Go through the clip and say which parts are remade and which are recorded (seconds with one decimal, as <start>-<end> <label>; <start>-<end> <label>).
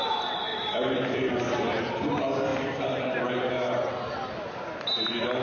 0.0-0.5 recorded; 0.5-1.3 remade; 1.3-2.5 recorded; 2.5-3.5 remade; 3.5-5.4 recorded